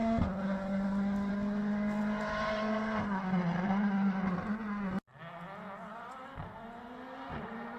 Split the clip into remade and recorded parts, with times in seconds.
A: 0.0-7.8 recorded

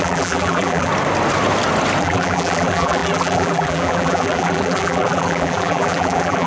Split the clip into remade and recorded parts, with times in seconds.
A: 0.0-0.9 remade; 0.9-2.0 recorded; 2.0-6.5 remade